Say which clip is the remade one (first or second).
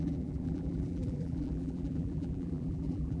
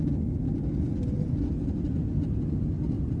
first